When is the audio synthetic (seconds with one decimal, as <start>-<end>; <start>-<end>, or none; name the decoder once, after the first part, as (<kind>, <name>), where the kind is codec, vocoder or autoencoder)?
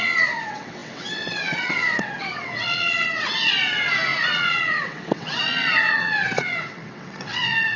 0.0-7.8 (vocoder, WaveNeXt)